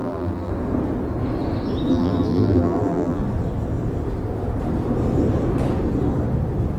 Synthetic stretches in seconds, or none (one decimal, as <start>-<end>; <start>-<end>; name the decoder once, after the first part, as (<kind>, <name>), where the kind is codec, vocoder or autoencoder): 0.0-0.5 (vocoder, BigVGAN v2); 1.9-3.2